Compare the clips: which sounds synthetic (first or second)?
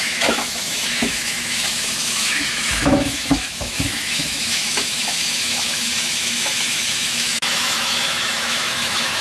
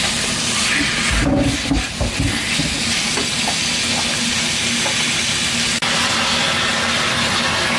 first